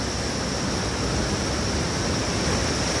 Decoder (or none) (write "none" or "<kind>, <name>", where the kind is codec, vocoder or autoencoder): none